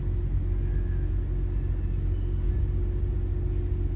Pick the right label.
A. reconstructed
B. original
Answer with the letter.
B